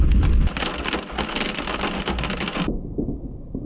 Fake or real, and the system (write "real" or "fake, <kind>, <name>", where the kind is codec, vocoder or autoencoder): real